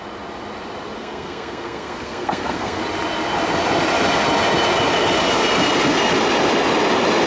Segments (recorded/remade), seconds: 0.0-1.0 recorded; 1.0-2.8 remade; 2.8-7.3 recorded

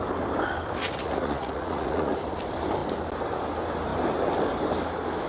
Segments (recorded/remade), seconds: 0.0-0.8 recorded; 0.8-2.2 remade; 2.2-5.3 recorded